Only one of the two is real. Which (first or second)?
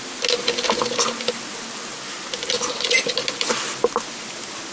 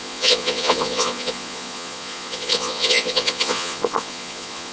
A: first